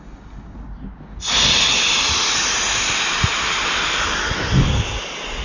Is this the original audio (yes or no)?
yes